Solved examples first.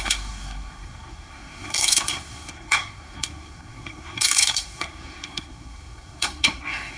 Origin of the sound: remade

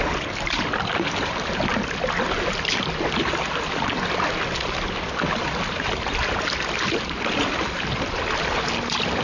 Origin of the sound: recorded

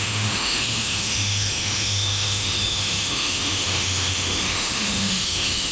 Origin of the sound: remade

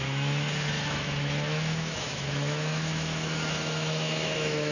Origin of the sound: remade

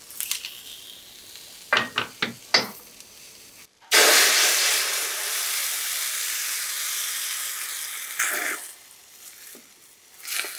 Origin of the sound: recorded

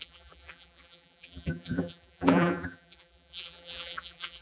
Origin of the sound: remade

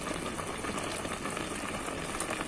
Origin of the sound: recorded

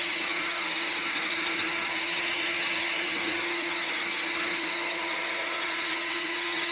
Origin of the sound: remade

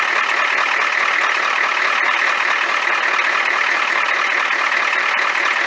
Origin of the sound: recorded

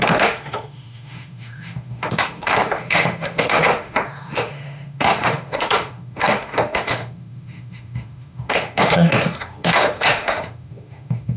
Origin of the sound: remade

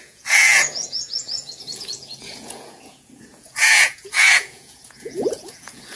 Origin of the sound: remade